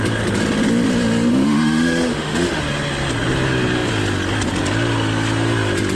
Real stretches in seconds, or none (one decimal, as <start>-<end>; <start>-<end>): 0.0-1.3; 2.6-6.0